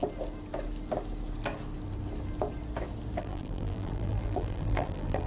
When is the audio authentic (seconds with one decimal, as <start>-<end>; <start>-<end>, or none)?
0.0-3.2